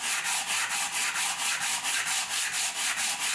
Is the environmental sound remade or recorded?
recorded